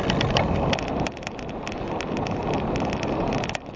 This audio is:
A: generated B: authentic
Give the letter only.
B